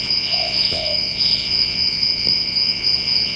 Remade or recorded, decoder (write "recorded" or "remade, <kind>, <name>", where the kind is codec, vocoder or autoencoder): remade, vocoder, Vocos